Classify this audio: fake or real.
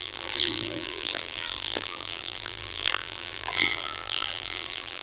fake